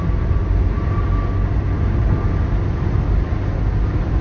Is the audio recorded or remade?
recorded